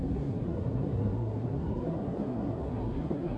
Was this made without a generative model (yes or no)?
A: no